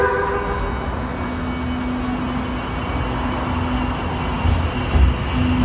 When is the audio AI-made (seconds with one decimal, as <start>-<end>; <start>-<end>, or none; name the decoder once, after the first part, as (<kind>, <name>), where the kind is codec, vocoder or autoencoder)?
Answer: none